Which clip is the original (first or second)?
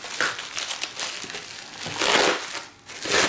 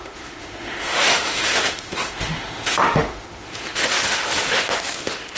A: first